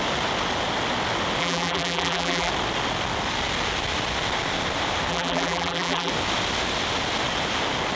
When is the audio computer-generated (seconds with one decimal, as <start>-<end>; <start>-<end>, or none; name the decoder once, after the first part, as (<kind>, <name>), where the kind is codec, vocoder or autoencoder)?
1.4-2.5 (vocoder, BigVGAN v2); 5.1-6.1